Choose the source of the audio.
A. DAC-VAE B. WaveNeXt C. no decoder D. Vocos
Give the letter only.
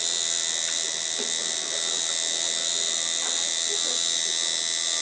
C